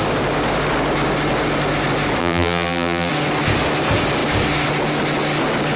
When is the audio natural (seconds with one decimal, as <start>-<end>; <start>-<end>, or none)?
0.0-2.2; 3.1-5.8